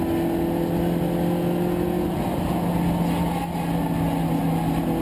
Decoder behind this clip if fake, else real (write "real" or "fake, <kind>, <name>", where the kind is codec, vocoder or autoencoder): real